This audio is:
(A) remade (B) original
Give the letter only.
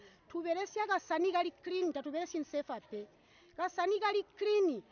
B